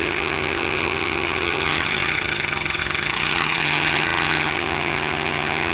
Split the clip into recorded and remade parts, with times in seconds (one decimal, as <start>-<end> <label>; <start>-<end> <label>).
0.0-5.7 remade